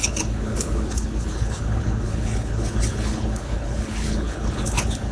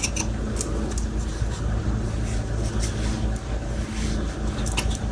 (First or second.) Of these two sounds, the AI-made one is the first